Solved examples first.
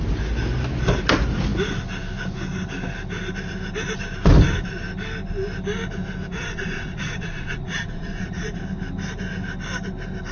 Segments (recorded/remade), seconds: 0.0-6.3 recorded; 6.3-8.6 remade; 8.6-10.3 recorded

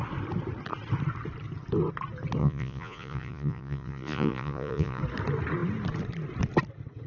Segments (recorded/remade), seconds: 0.0-2.4 recorded; 2.4-5.0 remade; 5.0-7.1 recorded

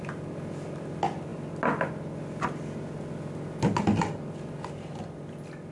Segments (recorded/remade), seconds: 0.0-5.7 recorded

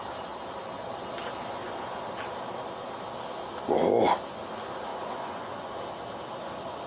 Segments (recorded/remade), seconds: 0.0-1.6 recorded; 1.6-2.1 remade; 2.1-4.9 recorded; 4.9-5.7 remade; 5.7-6.9 recorded

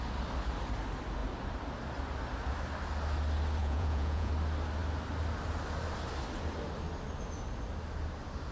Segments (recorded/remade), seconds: 0.0-3.6 recorded; 3.6-4.3 remade; 4.3-8.5 recorded

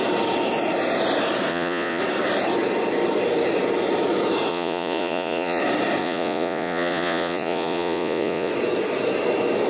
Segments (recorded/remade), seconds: 0.0-1.5 recorded; 1.5-2.0 remade; 2.0-4.5 recorded; 4.5-5.6 remade; 5.6-6.0 recorded; 6.0-8.5 remade; 8.5-9.7 recorded